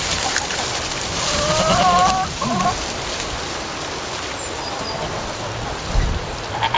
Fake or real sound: real